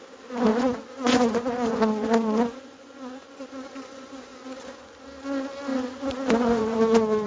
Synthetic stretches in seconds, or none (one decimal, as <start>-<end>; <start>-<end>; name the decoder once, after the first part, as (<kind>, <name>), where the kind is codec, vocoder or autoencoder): 0.5-4.9 (vocoder, Vocos); 5.7-7.3